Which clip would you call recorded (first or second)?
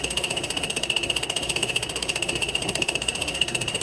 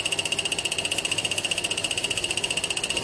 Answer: second